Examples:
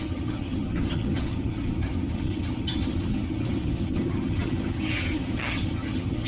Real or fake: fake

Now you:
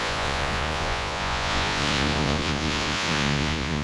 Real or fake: fake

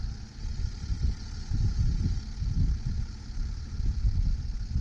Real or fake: real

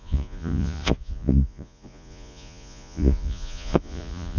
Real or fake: fake